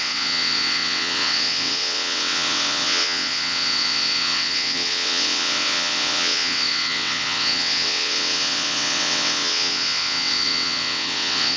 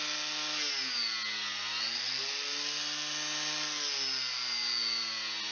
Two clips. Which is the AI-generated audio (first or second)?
first